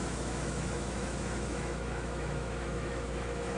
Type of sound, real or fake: fake